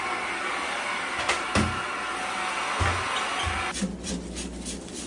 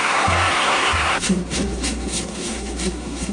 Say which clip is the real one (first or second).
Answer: first